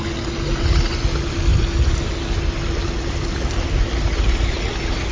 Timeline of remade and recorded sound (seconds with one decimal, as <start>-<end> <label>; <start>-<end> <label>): 0.0-5.1 recorded